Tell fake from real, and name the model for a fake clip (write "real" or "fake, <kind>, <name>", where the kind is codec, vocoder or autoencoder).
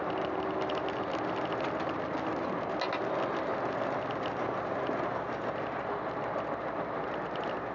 real